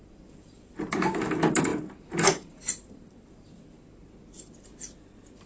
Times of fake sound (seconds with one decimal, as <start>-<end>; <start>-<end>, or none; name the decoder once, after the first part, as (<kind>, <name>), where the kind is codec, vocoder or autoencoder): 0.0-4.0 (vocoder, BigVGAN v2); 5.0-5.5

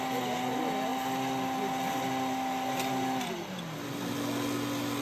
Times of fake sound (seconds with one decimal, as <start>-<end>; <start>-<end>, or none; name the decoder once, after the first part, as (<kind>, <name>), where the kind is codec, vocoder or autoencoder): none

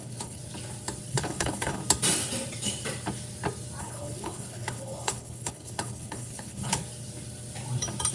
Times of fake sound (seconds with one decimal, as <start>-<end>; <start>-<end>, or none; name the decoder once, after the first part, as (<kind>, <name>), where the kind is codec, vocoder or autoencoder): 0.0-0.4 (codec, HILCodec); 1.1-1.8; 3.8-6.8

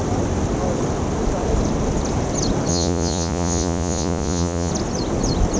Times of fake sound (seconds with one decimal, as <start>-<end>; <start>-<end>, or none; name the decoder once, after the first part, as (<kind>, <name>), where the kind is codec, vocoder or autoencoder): 2.7-4.7 (vocoder, Vocos)